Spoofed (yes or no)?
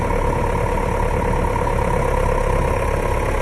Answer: no